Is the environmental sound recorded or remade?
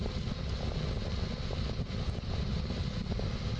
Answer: recorded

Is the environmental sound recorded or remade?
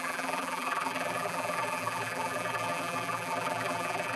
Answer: remade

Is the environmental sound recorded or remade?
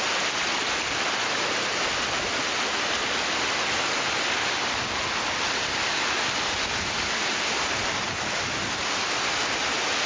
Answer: recorded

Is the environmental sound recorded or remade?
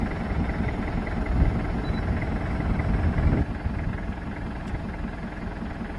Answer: recorded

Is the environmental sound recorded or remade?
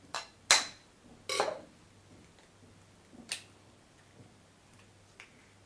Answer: recorded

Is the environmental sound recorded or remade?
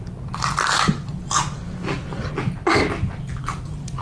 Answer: recorded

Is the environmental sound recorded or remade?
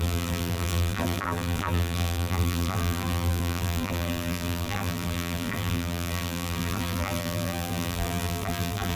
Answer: remade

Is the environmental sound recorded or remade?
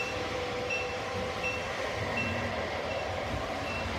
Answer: remade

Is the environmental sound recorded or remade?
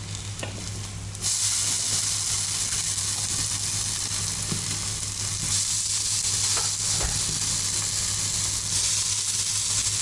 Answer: recorded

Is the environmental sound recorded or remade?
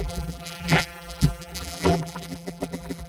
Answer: remade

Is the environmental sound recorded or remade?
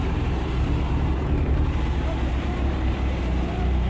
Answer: remade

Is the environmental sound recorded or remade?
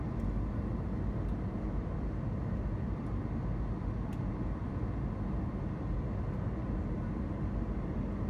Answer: recorded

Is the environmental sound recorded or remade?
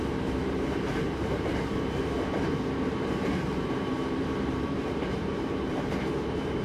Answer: remade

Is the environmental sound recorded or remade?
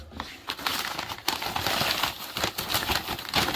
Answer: recorded